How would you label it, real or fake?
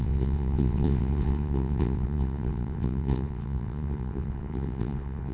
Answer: fake